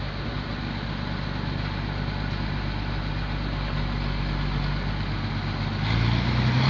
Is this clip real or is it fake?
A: real